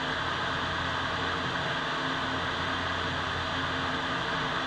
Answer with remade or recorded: recorded